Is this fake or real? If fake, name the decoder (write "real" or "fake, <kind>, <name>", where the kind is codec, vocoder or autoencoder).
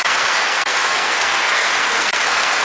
fake, codec, SNAC